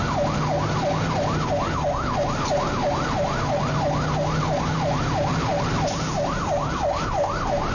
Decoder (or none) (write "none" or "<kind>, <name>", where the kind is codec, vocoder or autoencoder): none